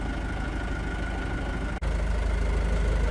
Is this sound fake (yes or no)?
no